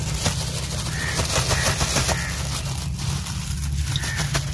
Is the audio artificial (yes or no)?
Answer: no